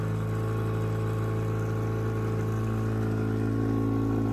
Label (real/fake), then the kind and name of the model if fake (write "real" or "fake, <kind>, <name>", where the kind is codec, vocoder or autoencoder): real